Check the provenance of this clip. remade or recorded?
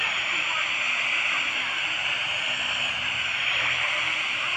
recorded